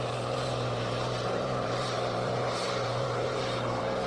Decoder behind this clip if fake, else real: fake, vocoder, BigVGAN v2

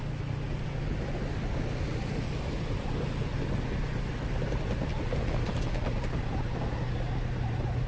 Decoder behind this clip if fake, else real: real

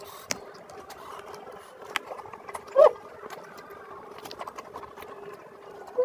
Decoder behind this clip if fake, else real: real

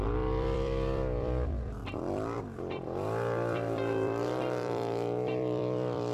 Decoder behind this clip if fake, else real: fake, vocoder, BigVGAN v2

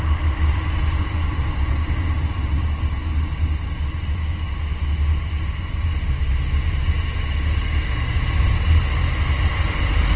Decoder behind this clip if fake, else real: real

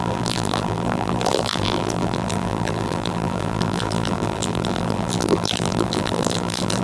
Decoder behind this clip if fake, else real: fake, vocoder, BigVGAN v2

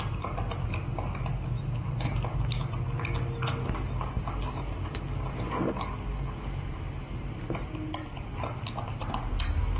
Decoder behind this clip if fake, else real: real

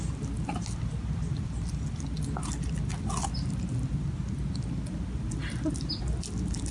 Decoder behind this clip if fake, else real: real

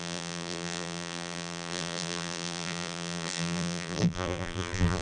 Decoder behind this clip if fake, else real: fake, vocoder, BigVGAN v2